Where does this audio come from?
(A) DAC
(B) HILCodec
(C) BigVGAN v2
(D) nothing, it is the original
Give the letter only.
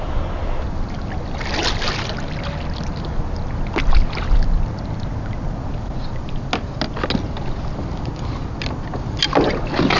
D